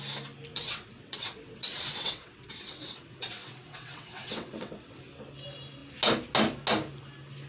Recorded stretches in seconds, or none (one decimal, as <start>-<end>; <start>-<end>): 0.0-0.5; 5.0-7.5